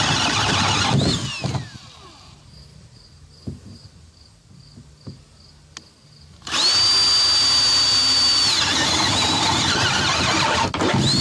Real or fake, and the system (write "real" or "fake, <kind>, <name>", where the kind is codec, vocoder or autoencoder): real